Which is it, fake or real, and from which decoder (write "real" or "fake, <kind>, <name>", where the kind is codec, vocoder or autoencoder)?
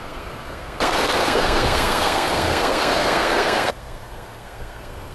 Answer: fake, codec, SNAC